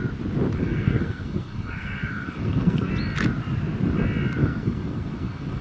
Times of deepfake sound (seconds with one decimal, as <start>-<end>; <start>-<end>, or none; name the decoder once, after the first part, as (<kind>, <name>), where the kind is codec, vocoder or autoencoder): 0.6-2.9 (codec, SNAC); 4.4-5.6